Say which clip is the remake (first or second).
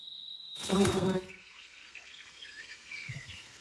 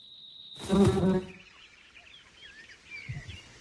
first